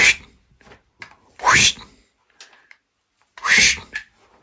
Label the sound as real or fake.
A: real